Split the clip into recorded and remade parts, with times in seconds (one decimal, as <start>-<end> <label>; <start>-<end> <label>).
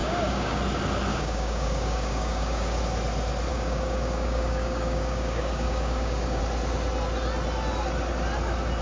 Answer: 0.0-0.6 remade; 0.6-1.1 recorded; 1.1-2.8 remade; 2.8-3.5 recorded; 3.5-6.4 remade; 6.4-8.8 recorded